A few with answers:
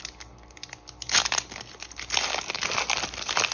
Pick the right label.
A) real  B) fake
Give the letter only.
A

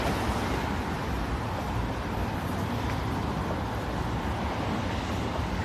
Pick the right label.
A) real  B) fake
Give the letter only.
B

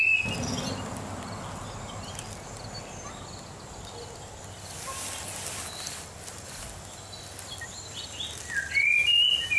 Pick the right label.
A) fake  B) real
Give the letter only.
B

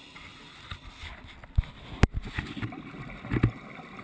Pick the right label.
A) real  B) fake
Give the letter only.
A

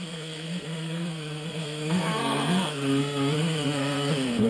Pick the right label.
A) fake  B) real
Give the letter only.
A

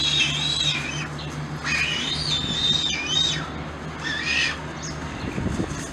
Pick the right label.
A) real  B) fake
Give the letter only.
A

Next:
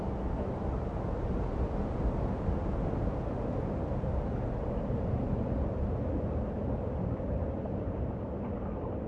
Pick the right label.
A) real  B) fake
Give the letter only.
A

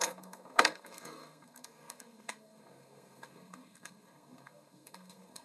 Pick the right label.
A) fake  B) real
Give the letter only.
A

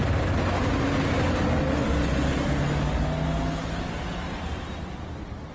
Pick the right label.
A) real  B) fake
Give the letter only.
A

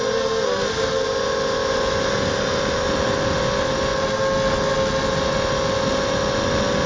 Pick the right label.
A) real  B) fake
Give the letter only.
A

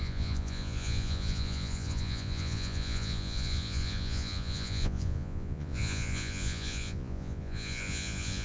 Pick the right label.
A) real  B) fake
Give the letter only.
B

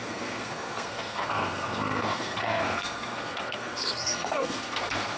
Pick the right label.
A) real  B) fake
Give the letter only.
B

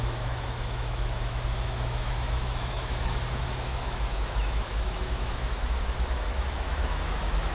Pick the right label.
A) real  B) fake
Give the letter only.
B